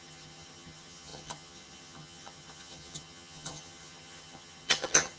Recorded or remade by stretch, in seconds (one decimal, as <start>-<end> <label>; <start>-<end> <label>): 0.0-5.2 remade